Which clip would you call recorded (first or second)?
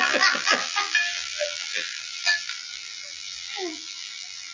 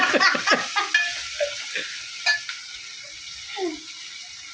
second